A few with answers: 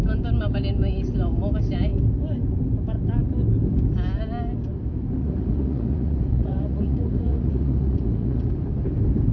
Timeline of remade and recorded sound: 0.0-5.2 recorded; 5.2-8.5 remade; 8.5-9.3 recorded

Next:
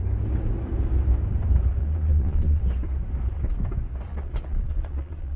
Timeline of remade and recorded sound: 0.0-1.8 recorded; 1.8-2.6 remade; 2.6-4.1 recorded; 4.1-5.4 remade

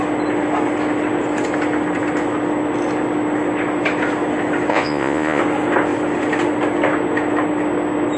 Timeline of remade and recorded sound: 0.0-4.7 recorded; 4.7-5.4 remade; 5.4-8.2 recorded